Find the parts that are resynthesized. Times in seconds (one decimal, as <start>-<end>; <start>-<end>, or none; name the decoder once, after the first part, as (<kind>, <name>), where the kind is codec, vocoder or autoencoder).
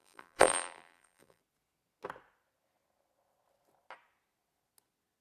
0.0-1.4 (vocoder, BigVGAN v2)